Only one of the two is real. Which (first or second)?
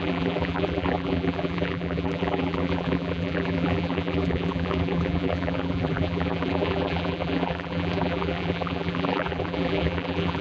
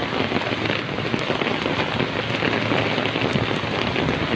second